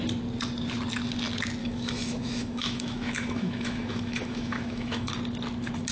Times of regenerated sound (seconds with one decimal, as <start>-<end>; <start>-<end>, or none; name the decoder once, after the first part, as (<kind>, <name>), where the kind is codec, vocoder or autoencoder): 1.6-5.1 (autoencoder, DAC-VAE)